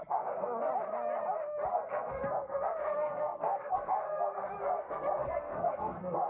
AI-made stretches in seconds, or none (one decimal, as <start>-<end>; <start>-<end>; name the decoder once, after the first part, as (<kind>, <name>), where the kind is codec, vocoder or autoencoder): 0.0-0.7 (codec, SNAC); 1.7-6.3